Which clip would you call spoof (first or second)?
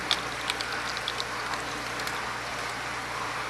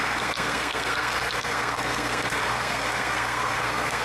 second